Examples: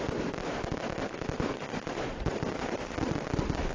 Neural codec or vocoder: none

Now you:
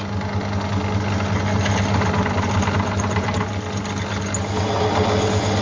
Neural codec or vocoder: none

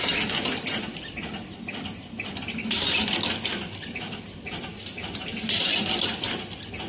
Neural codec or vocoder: none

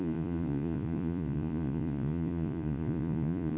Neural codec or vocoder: vocoder, Vocos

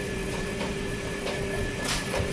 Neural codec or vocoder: vocoder, Vocos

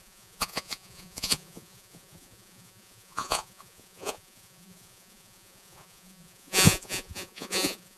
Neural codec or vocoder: vocoder, Vocos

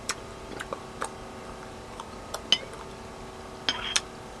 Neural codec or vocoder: none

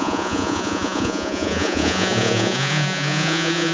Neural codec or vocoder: vocoder, Vocos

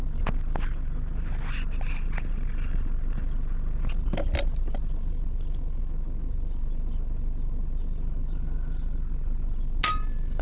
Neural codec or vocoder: none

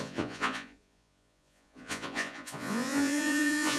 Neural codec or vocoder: vocoder, Vocos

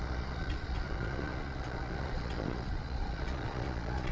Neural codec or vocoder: vocoder, Vocos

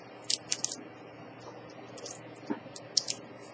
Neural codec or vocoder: none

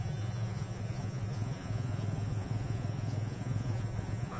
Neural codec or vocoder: vocoder, Vocos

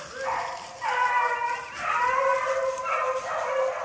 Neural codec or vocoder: none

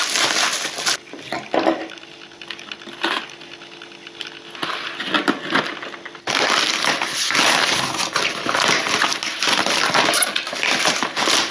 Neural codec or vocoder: none